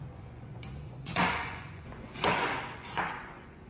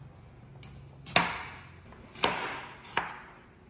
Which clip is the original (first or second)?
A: second